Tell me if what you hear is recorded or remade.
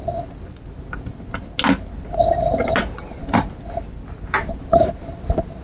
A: recorded